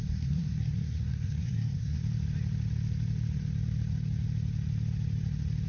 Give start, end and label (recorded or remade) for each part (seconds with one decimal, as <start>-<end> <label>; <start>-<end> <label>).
0.0-2.0 remade; 2.0-5.7 recorded